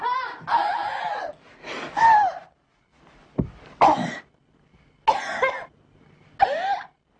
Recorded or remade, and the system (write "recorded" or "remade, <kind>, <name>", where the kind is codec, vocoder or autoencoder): recorded